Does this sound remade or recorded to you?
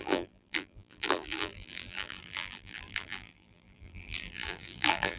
remade